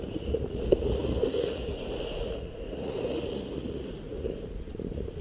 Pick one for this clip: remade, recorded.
remade